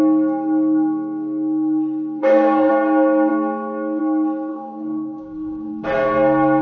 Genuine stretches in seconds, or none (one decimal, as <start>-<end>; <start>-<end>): 0.0-2.2; 2.7-4.5; 5.7-6.6